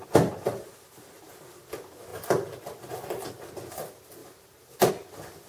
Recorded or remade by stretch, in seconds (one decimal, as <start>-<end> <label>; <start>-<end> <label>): 0.0-0.5 recorded; 0.5-1.3 remade; 1.3-4.2 recorded; 4.2-4.9 remade; 4.9-5.5 recorded